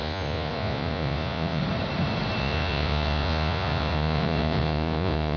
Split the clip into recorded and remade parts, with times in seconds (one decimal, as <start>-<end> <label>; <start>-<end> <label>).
0.0-1.6 remade; 1.6-2.4 recorded; 2.4-5.4 remade